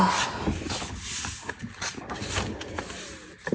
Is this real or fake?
real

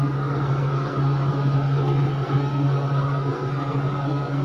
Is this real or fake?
fake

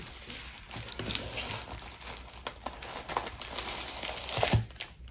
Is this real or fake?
real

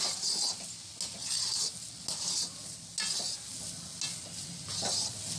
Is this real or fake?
real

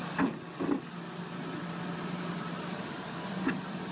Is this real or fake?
real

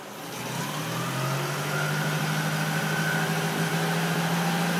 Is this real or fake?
real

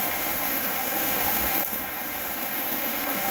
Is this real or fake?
fake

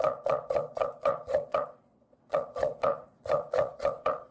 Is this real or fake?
fake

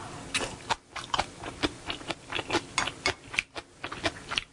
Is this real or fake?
real